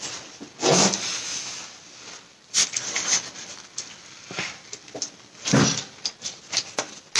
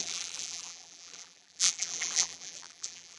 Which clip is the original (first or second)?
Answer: first